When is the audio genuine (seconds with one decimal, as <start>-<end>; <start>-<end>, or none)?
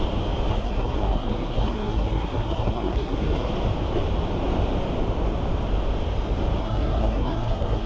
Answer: 0.0-0.5; 3.5-6.6